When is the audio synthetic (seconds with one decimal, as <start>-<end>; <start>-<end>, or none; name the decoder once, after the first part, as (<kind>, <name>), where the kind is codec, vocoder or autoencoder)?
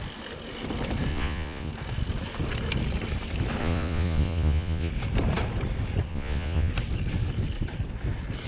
1.1-1.7 (vocoder, Vocos); 3.6-4.9; 6.1-6.7